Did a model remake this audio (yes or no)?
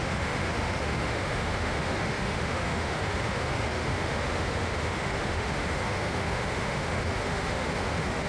yes